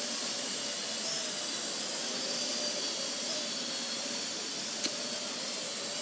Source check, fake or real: real